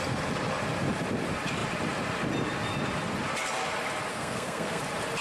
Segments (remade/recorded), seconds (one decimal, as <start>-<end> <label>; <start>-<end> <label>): 0.0-4.1 recorded; 4.1-4.8 remade; 4.8-5.2 recorded